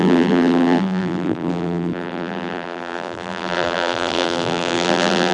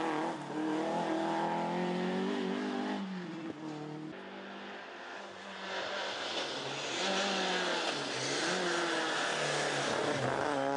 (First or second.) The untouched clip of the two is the second